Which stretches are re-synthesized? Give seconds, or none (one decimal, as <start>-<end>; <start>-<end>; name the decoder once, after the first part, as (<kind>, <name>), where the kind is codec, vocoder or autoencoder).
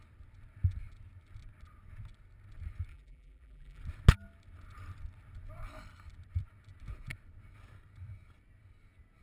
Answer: 2.9-3.8 (vocoder, BigVGAN v2)